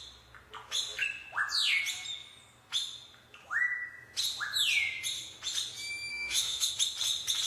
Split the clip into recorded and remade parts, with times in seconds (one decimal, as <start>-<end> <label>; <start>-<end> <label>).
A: 0.0-6.1 recorded; 6.1-6.7 remade; 6.7-7.5 recorded